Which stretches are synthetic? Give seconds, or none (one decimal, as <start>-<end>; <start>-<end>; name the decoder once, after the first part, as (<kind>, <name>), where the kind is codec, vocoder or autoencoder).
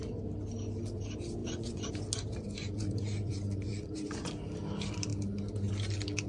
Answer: 1.4-1.9 (vocoder, Vocos); 2.6-4.3